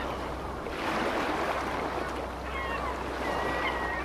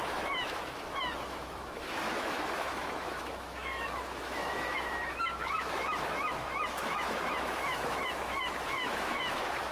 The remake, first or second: second